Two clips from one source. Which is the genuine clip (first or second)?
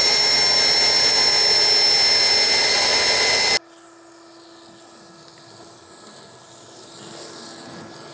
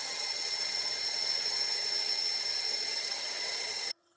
first